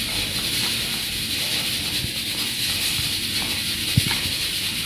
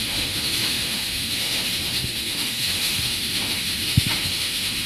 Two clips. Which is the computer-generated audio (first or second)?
second